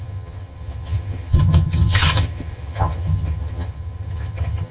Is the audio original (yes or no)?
no